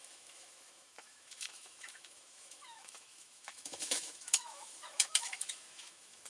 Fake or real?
fake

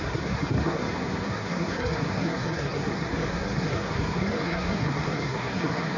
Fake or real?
fake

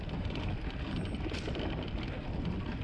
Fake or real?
real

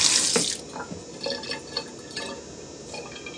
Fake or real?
real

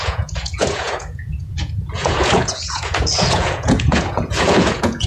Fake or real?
fake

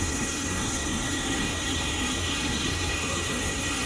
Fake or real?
fake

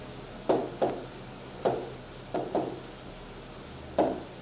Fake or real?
real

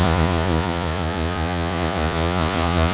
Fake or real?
fake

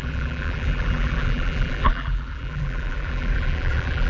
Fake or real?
fake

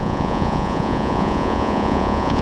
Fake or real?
fake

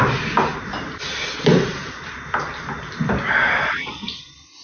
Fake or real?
real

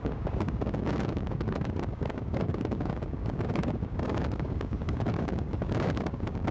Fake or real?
fake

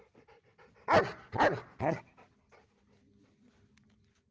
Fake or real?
real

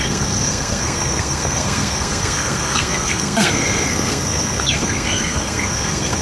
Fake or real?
fake